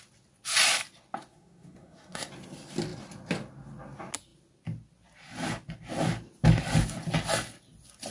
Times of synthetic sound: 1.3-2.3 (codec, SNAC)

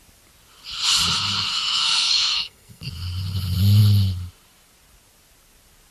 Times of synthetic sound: 1.5-2.9 (codec, SNAC)

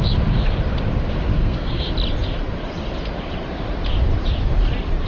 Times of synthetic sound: 1.4-1.9 (codec, SNAC)

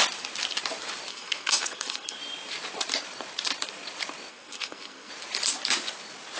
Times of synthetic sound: 1.1-2.2 (codec, SNAC); 4.3-5.1

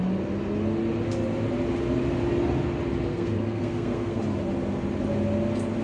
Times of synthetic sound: 3.1-4.2 (codec, SNAC)

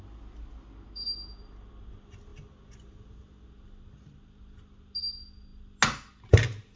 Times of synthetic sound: none